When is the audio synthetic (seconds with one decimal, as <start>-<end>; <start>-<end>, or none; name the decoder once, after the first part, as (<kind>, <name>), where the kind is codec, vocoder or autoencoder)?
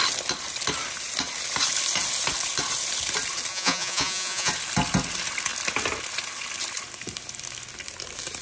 3.5-4.5 (vocoder, Vocos)